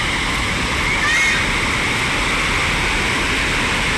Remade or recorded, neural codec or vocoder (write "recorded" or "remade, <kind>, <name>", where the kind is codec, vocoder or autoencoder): recorded